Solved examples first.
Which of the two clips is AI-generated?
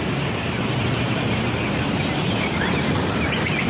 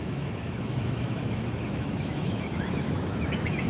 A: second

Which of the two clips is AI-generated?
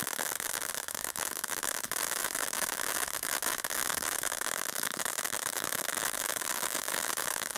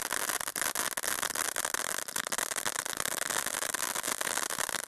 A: first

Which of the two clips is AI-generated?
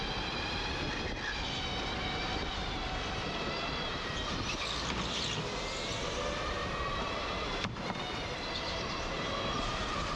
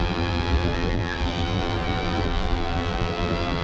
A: second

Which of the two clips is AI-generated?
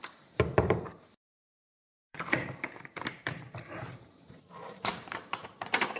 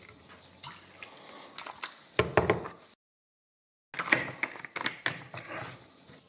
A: first